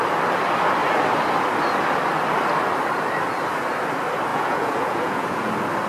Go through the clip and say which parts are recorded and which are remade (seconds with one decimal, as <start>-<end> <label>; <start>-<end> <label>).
0.0-4.3 recorded; 4.3-5.5 remade; 5.5-5.9 recorded